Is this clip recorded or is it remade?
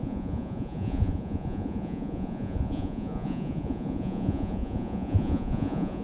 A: remade